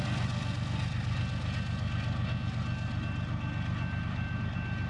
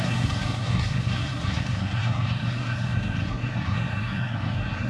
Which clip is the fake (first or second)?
second